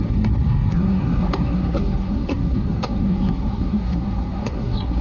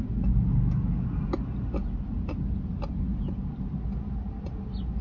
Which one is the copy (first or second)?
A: first